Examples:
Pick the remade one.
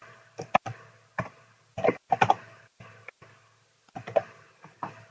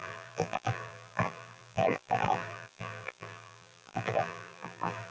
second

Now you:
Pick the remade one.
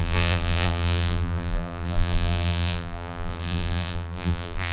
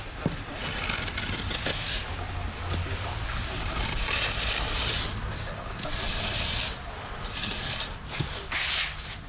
first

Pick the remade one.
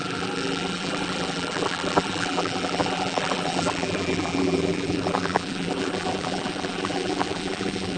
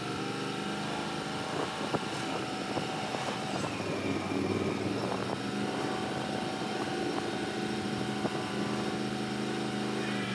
first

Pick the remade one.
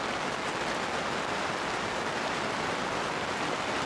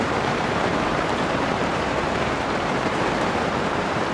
second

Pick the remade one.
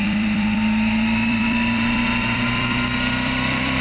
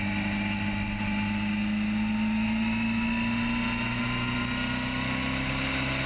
first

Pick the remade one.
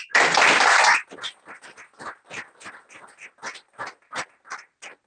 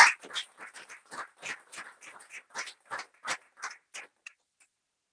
second